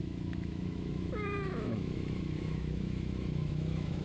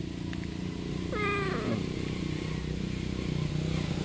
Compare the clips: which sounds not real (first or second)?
first